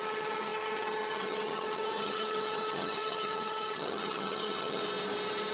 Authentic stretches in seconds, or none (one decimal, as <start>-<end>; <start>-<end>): 4.8-5.5